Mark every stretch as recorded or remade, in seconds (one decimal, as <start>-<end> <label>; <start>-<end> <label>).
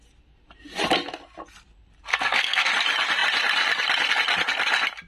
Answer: 0.0-2.1 recorded; 2.1-2.7 remade; 2.7-5.1 recorded